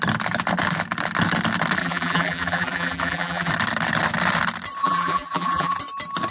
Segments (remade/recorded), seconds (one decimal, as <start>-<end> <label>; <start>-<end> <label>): 0.0-1.8 recorded; 1.8-3.5 remade; 3.5-4.8 recorded; 4.8-5.8 remade; 5.8-6.3 recorded